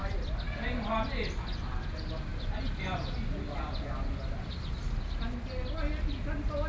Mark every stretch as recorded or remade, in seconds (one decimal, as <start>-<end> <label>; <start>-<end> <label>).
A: 0.0-6.7 recorded